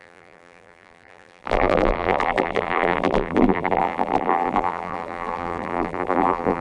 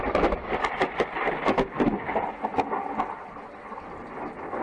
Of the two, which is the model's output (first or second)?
first